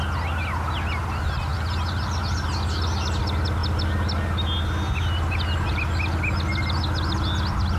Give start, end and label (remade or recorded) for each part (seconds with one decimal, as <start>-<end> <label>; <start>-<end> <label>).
0.0-1.5 recorded; 1.5-2.2 remade; 2.2-7.8 recorded